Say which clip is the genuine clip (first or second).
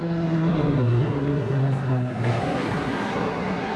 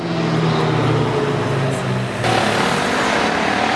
second